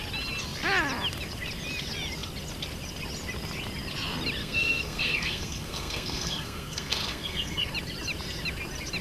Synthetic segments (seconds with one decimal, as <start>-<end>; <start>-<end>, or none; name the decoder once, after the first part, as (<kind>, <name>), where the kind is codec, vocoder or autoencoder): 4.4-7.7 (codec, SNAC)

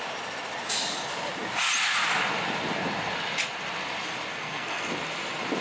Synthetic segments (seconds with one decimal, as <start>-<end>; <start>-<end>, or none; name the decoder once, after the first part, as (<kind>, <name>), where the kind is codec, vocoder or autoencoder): 4.3-4.9 (codec, SNAC)

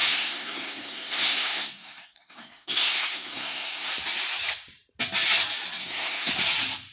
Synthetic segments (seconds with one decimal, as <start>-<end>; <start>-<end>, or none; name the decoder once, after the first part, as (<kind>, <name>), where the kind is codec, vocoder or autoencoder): 0.0-3.9 (codec, SNAC); 5.8-6.3

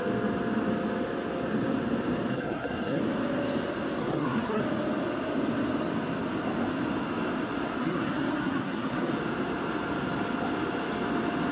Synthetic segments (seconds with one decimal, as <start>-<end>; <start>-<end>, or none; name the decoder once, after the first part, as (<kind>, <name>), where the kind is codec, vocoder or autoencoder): 2.3-3.0 (codec, SNAC); 4.0-4.6; 7.8-9.1